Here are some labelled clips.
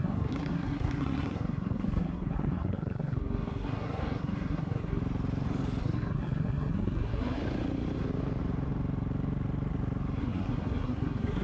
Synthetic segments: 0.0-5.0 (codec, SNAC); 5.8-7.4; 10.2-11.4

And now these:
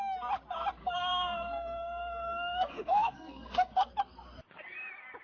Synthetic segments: 0.8-3.9 (codec, SNAC)

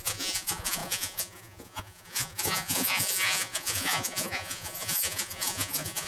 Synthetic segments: 0.0-6.1 (vocoder, Vocos)

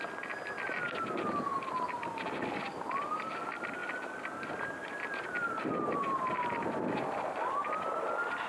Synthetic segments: none

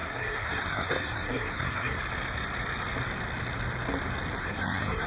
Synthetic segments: 0.0-2.0 (codec, SNAC); 4.4-5.1

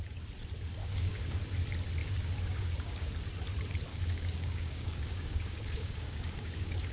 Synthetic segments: 0.8-1.4 (codec, DAC); 2.0-3.1; 3.9-6.9

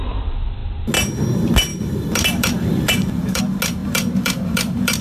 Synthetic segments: 1.7-3.4 (vocoder, BigVGAN v2); 3.8-5.0

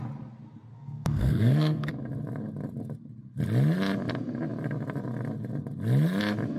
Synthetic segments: 0.7-1.9 (codec, SNAC)